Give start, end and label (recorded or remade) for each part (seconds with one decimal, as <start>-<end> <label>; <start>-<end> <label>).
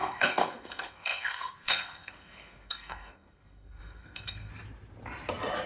0.0-4.5 remade; 4.5-5.7 recorded